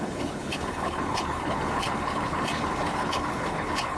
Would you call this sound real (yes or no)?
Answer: no